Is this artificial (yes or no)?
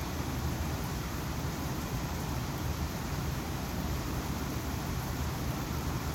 yes